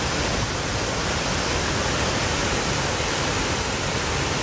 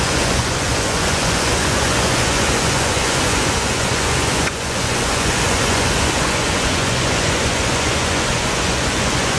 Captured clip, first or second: first